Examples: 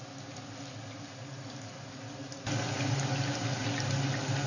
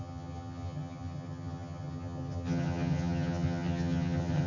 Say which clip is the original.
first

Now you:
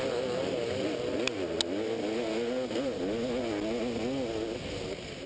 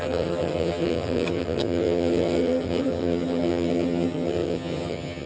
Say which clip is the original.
first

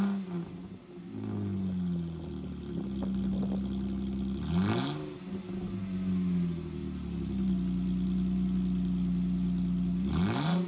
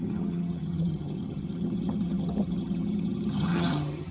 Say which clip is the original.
first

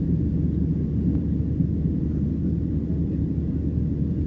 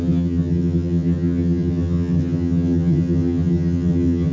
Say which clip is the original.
first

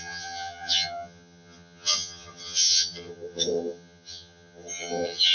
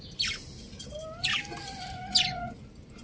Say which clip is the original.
second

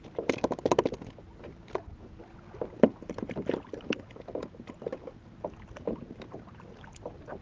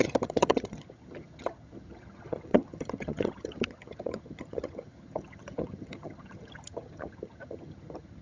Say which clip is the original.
first